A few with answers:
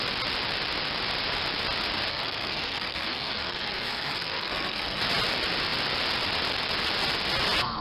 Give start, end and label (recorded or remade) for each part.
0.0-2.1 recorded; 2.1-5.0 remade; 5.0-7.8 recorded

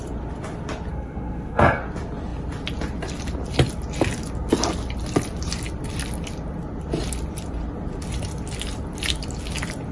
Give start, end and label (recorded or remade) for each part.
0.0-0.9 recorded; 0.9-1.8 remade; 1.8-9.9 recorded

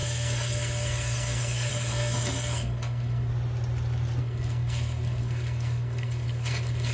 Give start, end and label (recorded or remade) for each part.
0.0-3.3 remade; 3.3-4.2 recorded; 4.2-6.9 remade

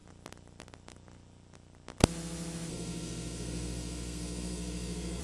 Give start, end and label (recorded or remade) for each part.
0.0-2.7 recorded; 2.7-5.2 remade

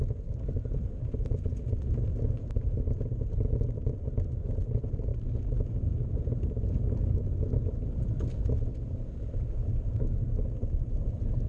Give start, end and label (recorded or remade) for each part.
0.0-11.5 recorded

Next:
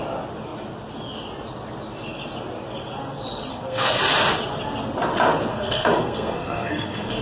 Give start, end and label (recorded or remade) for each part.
0.0-3.5 recorded; 3.5-4.0 remade; 4.0-5.5 recorded; 5.5-7.2 remade

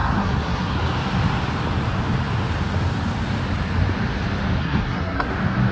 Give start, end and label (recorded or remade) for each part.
0.0-0.8 remade; 0.8-4.6 recorded; 4.6-5.3 remade; 5.3-5.7 recorded